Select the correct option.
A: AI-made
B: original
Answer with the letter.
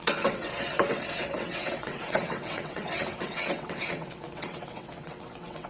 A